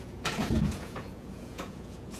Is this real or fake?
fake